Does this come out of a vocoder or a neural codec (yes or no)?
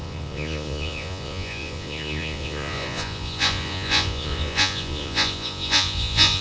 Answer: yes